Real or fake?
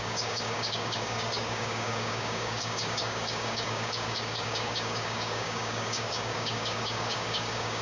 fake